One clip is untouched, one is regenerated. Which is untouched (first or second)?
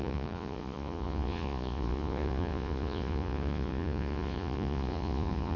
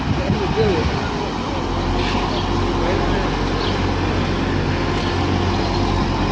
second